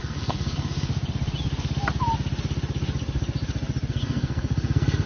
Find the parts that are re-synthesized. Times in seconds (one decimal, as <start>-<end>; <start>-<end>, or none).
0.0-0.9; 3.9-5.1

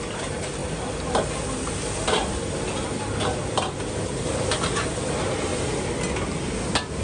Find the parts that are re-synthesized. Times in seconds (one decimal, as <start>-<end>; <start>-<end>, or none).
none

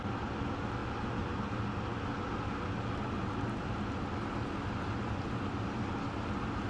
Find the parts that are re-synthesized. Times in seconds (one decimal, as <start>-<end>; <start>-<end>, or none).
none

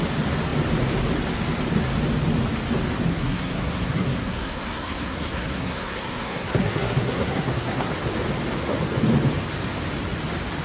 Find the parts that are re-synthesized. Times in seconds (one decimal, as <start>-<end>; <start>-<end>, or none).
3.1-7.9